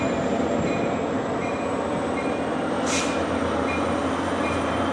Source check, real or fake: fake